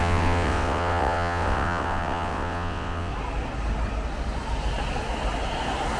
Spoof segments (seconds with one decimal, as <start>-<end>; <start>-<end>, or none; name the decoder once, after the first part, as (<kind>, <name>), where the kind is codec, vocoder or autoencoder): 0.0-3.1 (vocoder, WaveNeXt)